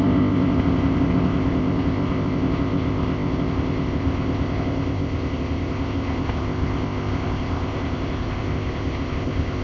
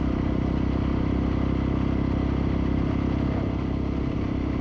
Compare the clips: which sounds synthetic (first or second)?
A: first